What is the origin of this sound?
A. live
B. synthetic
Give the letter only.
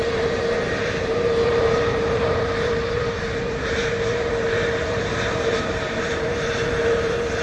B